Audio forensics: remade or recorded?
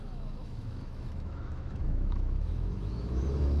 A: remade